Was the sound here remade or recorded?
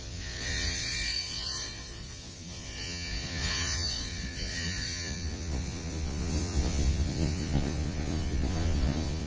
remade